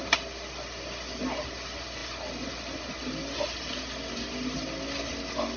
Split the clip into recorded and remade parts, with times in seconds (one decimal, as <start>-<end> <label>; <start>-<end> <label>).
0.0-5.6 recorded